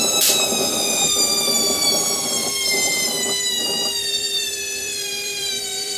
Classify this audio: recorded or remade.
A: remade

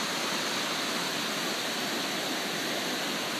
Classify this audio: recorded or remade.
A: recorded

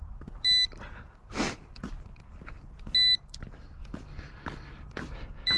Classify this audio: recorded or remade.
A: recorded